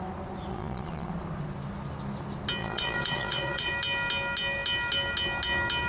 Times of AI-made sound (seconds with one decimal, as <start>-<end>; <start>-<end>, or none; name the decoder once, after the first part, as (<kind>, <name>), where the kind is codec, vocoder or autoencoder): 0.5-1.1 (vocoder, Vocos); 2.6-3.7